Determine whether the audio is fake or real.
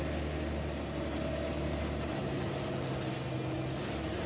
real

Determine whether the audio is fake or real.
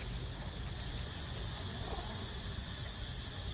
fake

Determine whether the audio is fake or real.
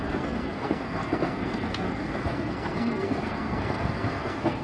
fake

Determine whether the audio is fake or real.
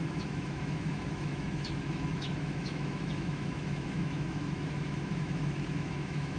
fake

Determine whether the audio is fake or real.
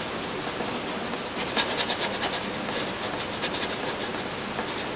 real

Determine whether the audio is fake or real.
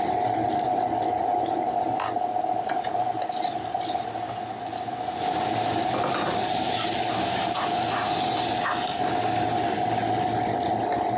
real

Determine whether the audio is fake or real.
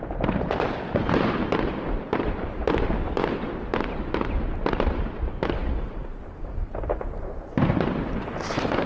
fake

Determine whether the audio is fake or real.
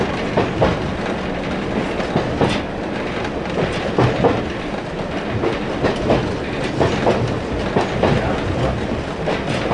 real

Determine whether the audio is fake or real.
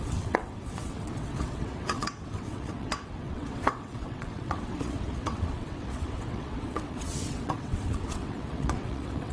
fake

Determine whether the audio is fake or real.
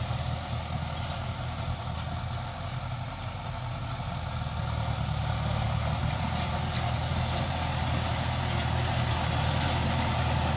real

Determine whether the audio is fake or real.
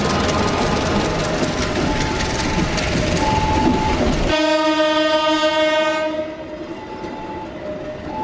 real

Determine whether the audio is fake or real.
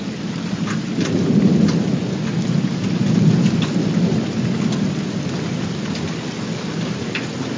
real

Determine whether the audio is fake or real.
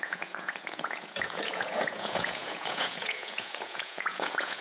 fake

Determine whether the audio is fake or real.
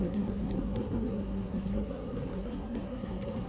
fake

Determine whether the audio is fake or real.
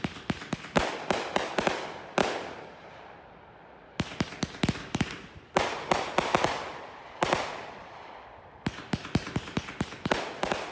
real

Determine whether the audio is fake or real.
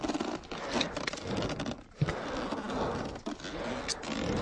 real